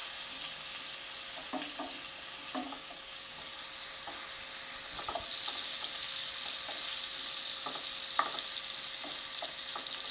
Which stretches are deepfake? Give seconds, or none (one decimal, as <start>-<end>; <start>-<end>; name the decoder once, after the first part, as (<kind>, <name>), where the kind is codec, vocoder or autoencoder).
2.6-3.3 (codec, DAC)